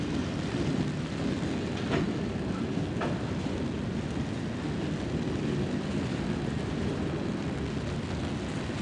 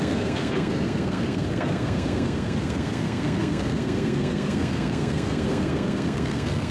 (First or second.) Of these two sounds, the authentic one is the first